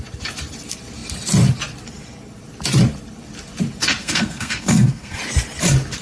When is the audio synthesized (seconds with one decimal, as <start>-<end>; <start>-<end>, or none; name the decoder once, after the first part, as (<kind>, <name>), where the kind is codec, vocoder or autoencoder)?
4.0-5.2 (codec, SNAC)

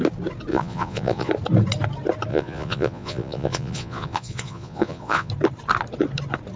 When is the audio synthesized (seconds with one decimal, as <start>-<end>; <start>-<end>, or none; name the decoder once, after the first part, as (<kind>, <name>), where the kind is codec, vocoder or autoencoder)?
0.5-1.3 (vocoder, Vocos); 2.3-5.3